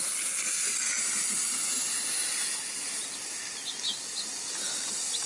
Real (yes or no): yes